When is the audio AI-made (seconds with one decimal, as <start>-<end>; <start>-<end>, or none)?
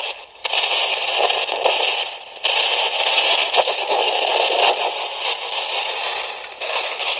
0.0-0.4; 3.6-4.0; 6.6-7.2